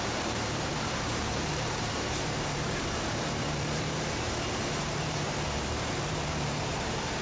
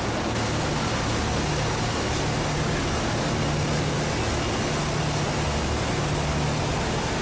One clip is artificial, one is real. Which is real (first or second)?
second